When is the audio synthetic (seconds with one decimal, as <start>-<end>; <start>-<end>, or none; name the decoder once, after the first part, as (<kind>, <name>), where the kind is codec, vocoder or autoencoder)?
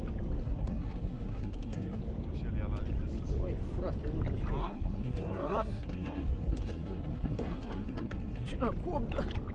0.4-2.0 (codec, SNAC); 4.6-8.5